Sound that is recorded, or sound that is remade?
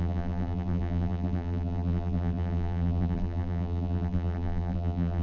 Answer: remade